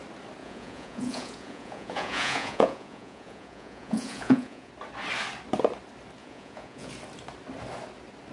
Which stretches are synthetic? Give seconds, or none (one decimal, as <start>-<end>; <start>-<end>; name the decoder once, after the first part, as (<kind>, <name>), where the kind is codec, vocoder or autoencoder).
0.4-4.7 (vocoder, Vocos); 6.2-6.9